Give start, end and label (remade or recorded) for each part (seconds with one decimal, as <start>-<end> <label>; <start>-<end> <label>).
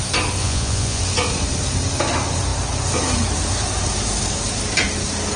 0.0-0.4 recorded; 0.4-1.0 remade; 1.0-5.4 recorded